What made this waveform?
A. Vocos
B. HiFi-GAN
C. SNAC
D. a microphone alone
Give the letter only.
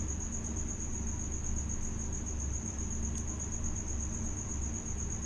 D